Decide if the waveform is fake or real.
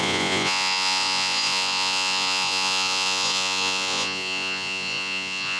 fake